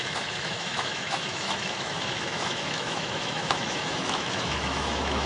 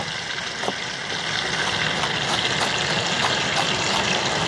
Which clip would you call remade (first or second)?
first